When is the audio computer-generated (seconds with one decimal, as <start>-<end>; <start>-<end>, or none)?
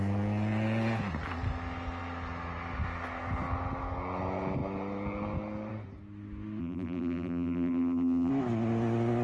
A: 6.6-8.3